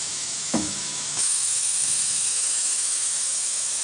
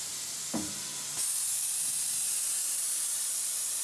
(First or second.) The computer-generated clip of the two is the first